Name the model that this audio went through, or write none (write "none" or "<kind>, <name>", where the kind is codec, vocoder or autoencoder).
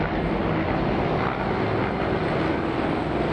none